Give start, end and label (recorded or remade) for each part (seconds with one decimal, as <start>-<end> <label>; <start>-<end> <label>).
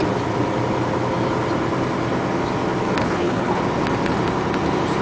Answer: 0.0-3.0 recorded; 3.0-3.6 remade; 3.6-5.0 recorded